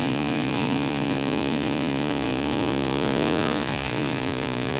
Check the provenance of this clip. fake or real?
fake